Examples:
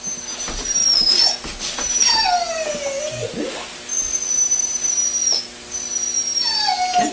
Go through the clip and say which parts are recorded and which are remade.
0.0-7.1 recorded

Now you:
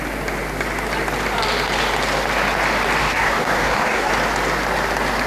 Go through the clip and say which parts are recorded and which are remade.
0.0-3.0 recorded; 3.0-4.1 remade; 4.1-5.3 recorded

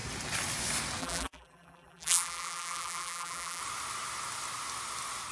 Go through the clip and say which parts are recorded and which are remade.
0.0-1.0 recorded; 1.0-3.6 remade; 3.6-5.3 recorded